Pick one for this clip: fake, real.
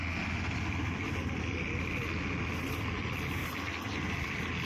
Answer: real